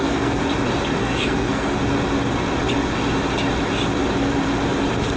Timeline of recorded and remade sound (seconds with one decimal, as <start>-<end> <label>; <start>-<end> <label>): 0.0-0.4 remade; 0.4-1.0 recorded; 1.0-1.8 remade; 1.8-5.2 recorded